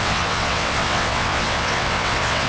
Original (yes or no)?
no